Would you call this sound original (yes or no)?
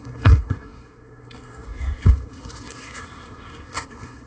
no